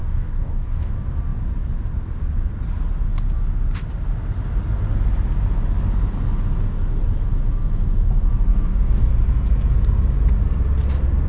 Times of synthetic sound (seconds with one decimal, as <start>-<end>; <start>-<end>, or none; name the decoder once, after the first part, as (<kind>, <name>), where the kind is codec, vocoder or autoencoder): 0.0-0.9 (codec, DAC); 8.5-9.1

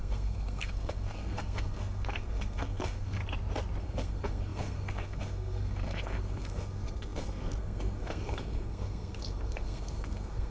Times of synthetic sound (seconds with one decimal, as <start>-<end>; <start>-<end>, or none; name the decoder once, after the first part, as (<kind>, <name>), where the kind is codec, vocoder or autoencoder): 0.0-3.2 (codec, SNAC); 3.8-10.5

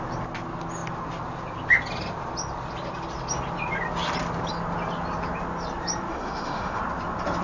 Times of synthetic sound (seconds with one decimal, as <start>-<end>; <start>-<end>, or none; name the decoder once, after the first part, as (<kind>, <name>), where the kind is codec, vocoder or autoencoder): 6.1-6.8 (autoencoder, DAC-VAE)

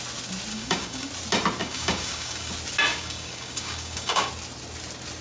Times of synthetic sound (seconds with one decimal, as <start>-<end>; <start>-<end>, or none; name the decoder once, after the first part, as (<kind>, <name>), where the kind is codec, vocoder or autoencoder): 0.5-1.1 (codec, DAC); 1.6-2.5; 2.9-4.3

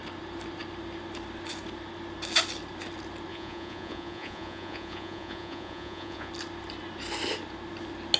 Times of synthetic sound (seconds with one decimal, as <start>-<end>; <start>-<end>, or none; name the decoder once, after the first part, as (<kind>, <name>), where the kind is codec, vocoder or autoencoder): 3.3-6.3 (vocoder, Vocos)

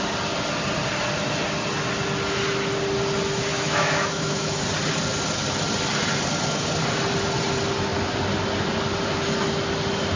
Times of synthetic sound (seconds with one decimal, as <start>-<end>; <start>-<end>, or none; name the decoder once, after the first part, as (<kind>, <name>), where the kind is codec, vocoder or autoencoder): 3.5-4.6 (autoencoder, DAC-VAE)

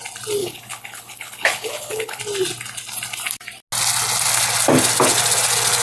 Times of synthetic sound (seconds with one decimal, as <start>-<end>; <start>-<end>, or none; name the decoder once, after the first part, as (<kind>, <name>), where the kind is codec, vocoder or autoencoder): 0.4-2.2 (codec, HILCodec)